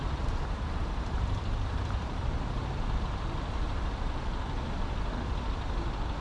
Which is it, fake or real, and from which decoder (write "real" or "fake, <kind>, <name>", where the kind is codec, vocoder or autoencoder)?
fake, vocoder, BigVGAN v2